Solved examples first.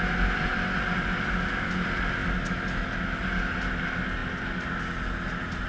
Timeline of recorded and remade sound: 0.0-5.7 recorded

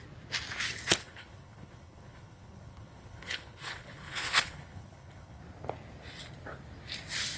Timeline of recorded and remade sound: 0.0-1.0 recorded; 1.0-5.4 remade; 5.4-7.4 recorded